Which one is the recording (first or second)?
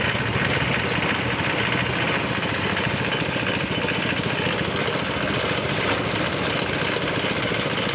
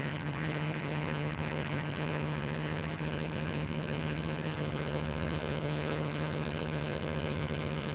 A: first